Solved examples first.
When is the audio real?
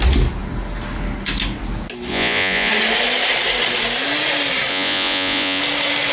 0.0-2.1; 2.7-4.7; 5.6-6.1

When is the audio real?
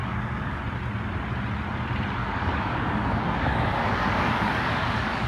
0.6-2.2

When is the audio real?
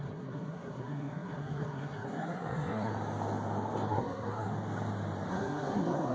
2.9-3.9; 4.5-5.3